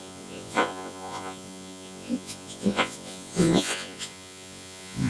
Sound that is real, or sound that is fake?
fake